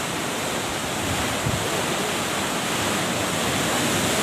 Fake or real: real